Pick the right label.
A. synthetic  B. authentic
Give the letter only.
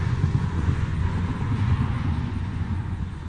A